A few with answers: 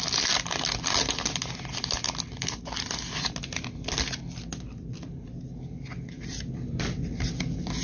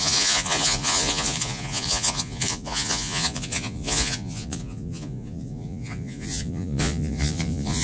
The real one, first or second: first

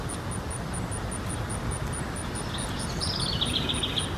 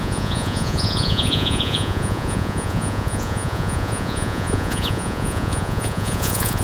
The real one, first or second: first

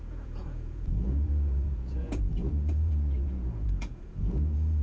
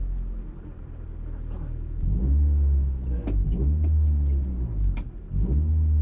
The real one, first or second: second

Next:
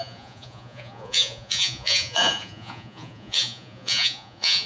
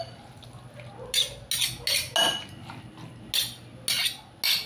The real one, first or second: second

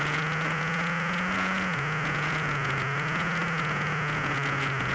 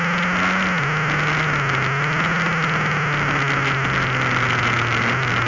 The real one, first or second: second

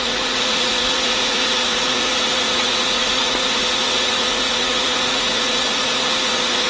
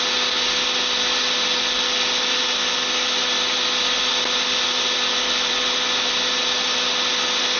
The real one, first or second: second